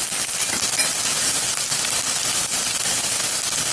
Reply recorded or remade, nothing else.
recorded